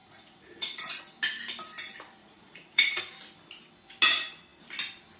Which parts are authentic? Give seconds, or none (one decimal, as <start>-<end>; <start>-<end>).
1.0-2.2; 3.0-5.2